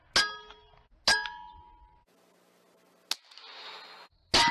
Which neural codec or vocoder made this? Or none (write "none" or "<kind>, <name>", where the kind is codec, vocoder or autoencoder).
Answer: none